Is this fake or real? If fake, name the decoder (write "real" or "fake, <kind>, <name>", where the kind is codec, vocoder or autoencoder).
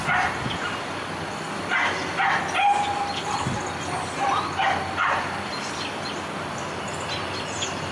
real